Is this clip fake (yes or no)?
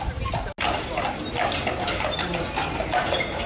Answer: no